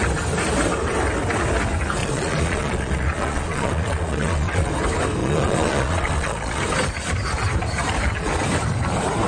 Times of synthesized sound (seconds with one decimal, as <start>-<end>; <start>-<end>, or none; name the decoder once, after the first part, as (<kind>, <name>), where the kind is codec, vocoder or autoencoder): 2.0-4.7 (vocoder, Vocos); 5.2-6.6